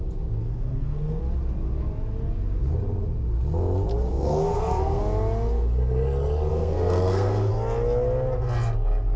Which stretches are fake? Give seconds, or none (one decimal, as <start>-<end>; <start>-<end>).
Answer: 0.4-1.2; 4.1-5.0; 6.5-7.5